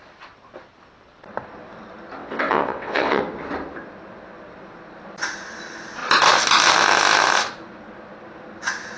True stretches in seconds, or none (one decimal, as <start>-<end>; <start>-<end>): 0.0-2.2; 3.2-9.0